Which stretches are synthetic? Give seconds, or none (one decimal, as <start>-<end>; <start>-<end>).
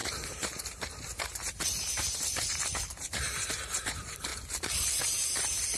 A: 0.0-4.3; 4.9-5.8